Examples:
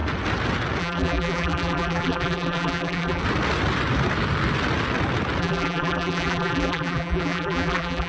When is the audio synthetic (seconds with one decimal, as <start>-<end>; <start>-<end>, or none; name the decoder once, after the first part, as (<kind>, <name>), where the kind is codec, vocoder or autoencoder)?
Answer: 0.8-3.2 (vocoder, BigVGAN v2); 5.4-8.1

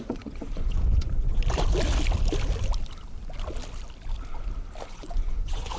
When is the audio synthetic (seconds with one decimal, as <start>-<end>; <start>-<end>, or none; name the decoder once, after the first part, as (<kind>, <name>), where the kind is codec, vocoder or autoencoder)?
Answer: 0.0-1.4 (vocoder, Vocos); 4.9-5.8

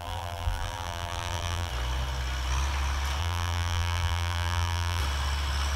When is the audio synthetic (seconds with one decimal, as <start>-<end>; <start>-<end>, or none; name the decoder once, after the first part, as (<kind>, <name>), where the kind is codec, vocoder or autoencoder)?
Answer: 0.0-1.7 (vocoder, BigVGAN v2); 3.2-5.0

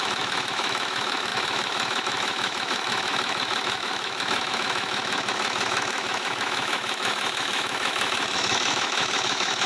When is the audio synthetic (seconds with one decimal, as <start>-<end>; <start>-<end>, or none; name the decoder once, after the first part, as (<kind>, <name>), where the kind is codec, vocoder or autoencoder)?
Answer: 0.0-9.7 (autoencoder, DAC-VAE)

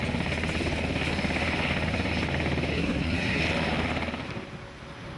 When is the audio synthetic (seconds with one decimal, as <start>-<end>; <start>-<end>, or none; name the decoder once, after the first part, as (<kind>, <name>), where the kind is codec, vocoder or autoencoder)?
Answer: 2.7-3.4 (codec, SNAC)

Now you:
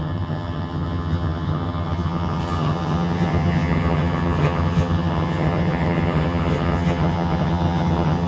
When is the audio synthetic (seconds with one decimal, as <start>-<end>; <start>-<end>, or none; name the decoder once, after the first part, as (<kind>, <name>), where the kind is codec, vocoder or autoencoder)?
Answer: 0.0-8.3 (vocoder, HiFi-GAN)